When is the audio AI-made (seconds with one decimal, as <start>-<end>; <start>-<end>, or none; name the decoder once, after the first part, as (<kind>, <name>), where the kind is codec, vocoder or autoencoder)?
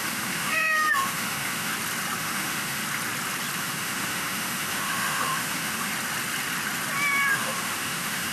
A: 0.0-1.7 (autoencoder, DAC-VAE); 2.2-2.8; 3.6-5.9; 7.3-8.3